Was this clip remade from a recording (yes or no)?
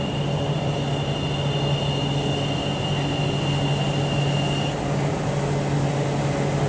no